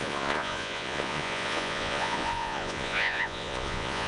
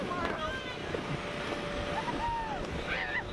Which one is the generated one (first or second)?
first